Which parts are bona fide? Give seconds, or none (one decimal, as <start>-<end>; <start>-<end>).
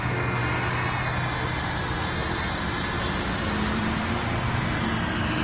0.0-2.2